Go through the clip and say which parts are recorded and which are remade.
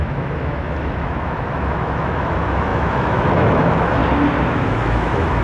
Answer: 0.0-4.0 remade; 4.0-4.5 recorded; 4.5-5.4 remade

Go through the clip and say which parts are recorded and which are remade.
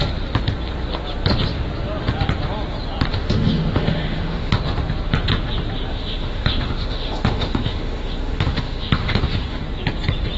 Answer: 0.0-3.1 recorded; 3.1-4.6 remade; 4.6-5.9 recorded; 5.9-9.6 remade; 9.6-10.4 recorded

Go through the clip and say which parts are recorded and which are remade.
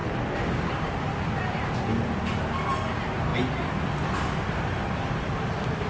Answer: 0.0-5.9 recorded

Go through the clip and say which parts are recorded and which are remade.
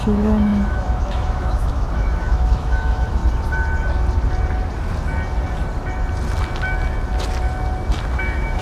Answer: 0.0-3.2 remade; 3.2-8.2 recorded; 8.2-8.6 remade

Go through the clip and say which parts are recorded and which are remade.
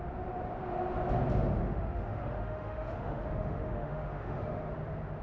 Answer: 0.0-1.6 recorded; 1.6-4.7 remade; 4.7-5.2 recorded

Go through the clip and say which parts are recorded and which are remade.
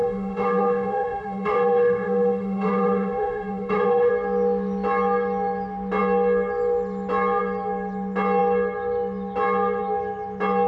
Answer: 0.0-4.1 remade; 4.1-10.7 recorded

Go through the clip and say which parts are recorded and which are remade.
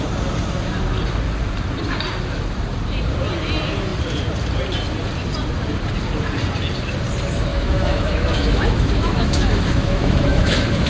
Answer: 0.0-7.5 recorded; 7.5-10.9 remade